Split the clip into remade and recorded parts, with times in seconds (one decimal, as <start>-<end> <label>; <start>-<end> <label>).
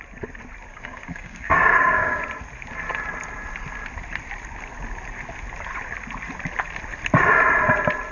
0.0-0.7 recorded; 0.7-2.2 remade; 2.2-8.1 recorded